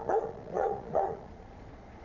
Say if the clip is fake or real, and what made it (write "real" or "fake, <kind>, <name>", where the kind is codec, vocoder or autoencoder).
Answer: fake, vocoder, Vocos